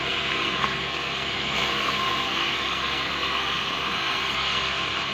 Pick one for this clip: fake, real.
fake